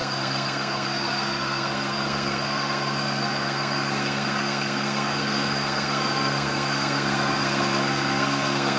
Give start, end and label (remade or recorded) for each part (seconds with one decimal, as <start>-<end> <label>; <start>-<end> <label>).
0.0-8.8 remade